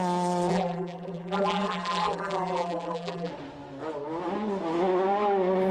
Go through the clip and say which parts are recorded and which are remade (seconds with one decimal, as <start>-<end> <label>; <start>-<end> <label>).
0.0-0.5 recorded; 0.5-3.3 remade; 3.3-5.7 recorded